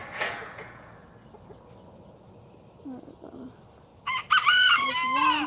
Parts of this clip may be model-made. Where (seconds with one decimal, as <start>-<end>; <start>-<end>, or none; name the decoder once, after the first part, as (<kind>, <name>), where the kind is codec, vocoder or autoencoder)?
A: 0.0-0.9 (vocoder, Vocos)